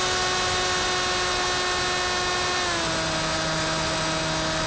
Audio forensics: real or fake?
real